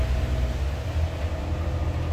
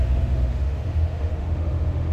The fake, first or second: second